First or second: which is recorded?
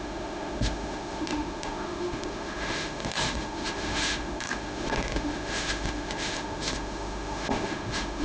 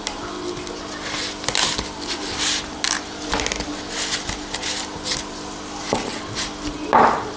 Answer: second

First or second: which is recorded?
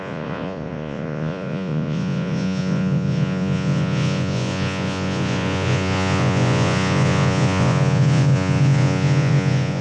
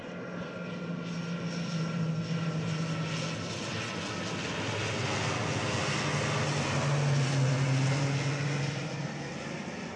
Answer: second